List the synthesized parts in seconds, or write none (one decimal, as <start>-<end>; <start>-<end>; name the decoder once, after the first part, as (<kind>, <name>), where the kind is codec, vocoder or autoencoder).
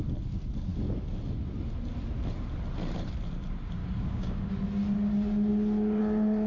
3.8-4.5 (codec, DAC)